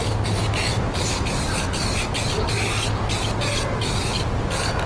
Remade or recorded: recorded